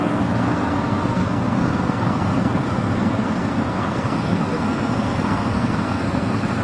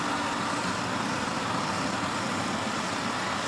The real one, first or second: second